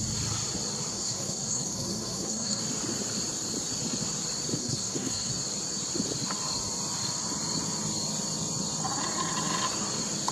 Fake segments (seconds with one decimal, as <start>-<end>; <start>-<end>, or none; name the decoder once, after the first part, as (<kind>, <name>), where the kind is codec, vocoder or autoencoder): 0.9-2.6 (codec, SNAC); 4.6-5.3